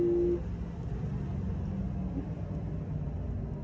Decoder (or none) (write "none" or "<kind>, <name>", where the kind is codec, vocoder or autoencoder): none